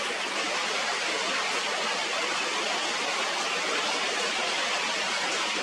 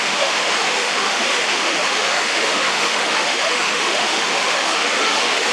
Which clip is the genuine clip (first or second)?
first